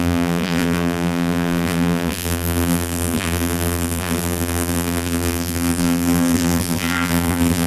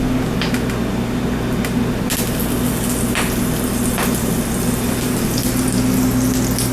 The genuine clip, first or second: second